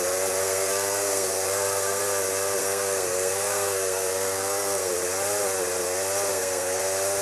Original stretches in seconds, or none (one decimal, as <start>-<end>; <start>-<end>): 0.0-0.4; 2.0-2.6; 4.9-6.3; 6.8-7.2